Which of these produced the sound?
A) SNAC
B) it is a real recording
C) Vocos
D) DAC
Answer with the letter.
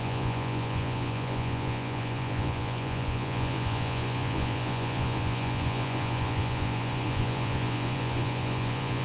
C